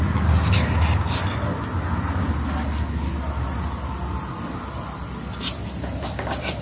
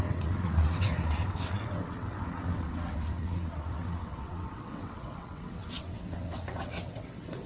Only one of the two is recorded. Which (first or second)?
first